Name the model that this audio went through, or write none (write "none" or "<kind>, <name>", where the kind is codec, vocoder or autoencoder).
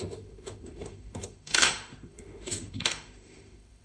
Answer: autoencoder, DAC-VAE